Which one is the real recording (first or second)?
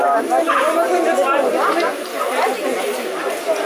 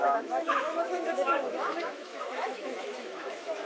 first